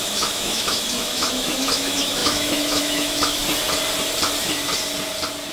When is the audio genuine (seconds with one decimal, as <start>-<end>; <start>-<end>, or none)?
3.4-5.5